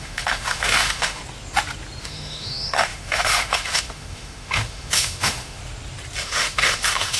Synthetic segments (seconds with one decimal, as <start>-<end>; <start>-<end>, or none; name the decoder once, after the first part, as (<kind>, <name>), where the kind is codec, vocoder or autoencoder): 0.0-1.2 (autoencoder, DAC-VAE); 2.0-5.6; 6.2-7.2